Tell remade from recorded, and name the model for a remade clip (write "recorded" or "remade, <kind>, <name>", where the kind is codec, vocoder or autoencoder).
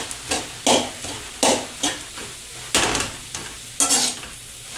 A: recorded